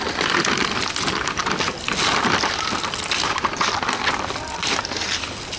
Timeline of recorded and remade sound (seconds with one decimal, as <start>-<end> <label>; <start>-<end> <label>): 0.0-5.6 remade